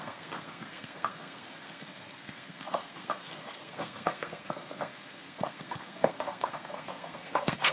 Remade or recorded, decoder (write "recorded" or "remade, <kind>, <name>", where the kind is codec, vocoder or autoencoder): remade, codec, SNAC